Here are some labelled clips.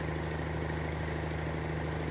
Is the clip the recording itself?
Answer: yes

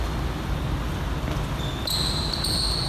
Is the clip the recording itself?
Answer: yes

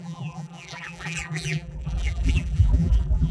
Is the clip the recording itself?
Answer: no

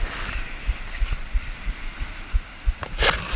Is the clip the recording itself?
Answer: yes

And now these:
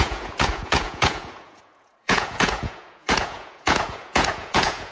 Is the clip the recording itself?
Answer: no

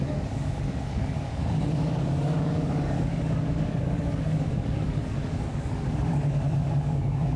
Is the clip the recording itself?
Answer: no